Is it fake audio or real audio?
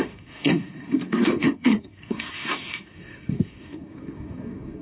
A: fake